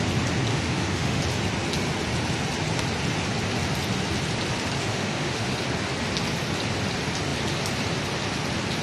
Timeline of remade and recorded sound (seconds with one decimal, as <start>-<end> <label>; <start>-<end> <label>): 0.0-0.5 recorded; 0.5-1.2 remade; 1.2-4.9 recorded; 4.9-5.5 remade; 5.5-8.8 recorded